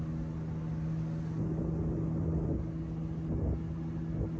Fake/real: real